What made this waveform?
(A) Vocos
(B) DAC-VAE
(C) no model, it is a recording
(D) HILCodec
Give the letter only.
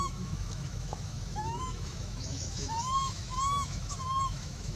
B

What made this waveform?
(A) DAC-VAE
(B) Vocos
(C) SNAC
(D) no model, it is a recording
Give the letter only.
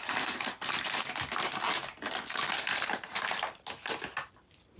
D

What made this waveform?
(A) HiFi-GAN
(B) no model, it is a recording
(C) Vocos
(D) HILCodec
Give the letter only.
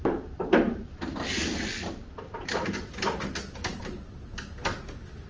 B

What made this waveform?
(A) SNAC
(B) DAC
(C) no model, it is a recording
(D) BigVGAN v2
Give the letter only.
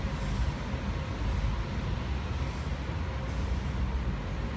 C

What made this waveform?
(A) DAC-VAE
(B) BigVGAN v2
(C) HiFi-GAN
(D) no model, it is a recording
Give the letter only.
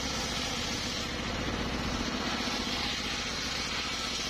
D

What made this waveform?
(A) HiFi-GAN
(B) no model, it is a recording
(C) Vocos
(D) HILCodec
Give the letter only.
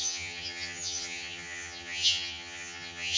A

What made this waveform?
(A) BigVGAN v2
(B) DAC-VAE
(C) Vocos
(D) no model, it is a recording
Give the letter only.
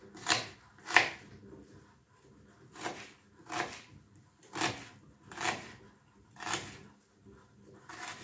D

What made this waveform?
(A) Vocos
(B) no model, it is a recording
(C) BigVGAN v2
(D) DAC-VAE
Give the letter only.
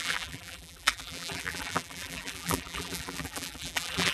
C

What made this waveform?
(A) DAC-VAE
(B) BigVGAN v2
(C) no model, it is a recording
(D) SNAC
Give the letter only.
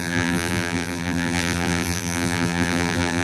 B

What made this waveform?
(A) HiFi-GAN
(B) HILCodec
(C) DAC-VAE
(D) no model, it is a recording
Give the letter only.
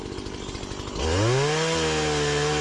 D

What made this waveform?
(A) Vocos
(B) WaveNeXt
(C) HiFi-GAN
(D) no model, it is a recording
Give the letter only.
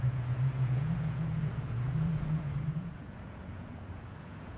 A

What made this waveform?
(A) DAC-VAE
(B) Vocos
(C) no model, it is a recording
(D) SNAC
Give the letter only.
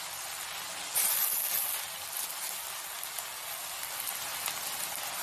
C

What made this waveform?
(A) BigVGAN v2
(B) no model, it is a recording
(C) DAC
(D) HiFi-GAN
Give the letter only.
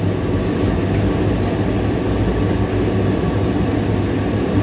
B